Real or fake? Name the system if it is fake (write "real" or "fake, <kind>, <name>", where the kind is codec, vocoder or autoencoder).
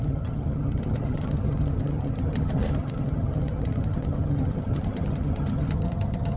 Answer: fake, vocoder, HiFi-GAN